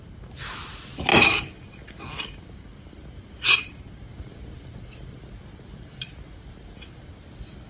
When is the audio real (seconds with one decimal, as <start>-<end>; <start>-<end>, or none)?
0.0-7.7